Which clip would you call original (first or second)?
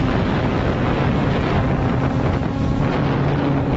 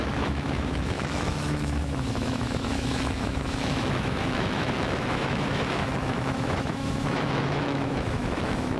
first